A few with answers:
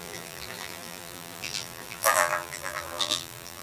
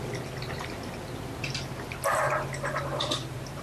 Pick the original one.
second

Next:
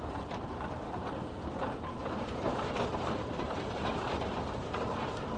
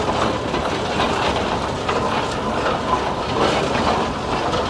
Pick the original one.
second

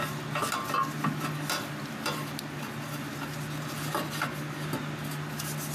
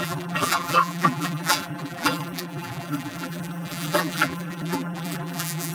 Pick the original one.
first